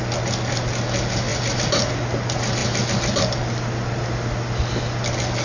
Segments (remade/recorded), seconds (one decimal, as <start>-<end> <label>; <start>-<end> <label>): 0.0-5.4 recorded